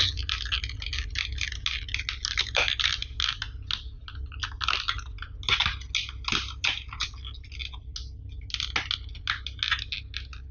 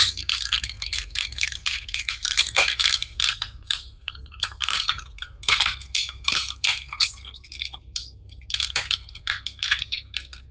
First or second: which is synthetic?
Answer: second